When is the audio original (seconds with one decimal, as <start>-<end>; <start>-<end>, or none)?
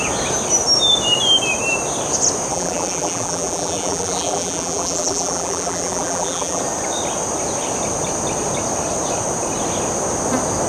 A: 0.0-2.5; 6.6-10.7